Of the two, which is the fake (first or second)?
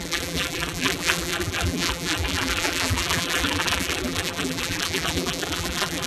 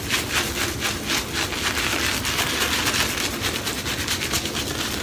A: first